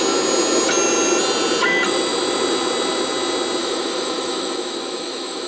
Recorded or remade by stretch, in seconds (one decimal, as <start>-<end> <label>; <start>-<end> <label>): 0.0-3.6 recorded; 3.6-5.5 remade